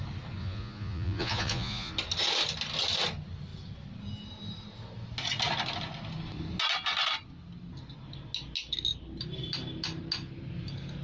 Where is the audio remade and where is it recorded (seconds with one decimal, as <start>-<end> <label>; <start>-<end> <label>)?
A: 0.0-0.4 recorded; 0.4-1.9 remade; 1.9-11.0 recorded